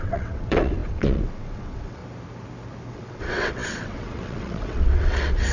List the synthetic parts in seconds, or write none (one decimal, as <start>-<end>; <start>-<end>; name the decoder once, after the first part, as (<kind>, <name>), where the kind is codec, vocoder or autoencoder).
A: 0.0-2.0 (vocoder, WaveNeXt); 2.9-5.5